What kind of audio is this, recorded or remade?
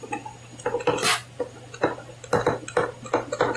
recorded